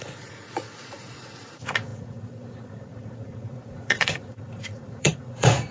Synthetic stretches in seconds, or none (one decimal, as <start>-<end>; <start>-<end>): 0.0-5.7